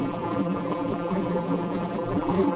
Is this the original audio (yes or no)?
no